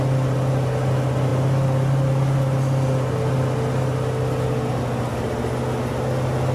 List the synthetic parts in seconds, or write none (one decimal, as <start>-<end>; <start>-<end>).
none